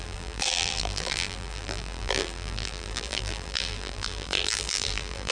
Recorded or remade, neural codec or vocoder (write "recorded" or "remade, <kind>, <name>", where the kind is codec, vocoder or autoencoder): remade, vocoder, BigVGAN v2